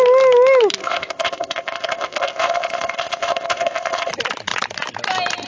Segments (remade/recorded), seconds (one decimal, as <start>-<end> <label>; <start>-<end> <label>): 0.0-0.8 recorded; 0.8-4.1 remade; 4.1-5.5 recorded